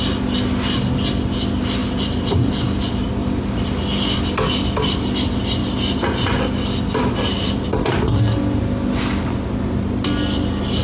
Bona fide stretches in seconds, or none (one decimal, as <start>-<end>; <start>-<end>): 0.0-10.8